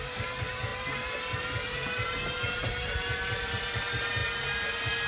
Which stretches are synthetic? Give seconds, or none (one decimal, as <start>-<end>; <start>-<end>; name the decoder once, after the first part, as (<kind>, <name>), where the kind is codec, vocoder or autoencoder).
none